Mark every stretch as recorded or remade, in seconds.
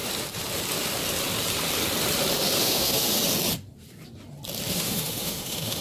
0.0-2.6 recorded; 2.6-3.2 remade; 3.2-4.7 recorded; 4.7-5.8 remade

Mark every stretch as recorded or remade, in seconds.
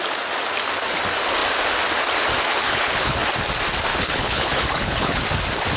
0.0-2.5 recorded; 2.5-3.2 remade; 3.2-3.9 recorded; 3.9-5.2 remade; 5.2-5.8 recorded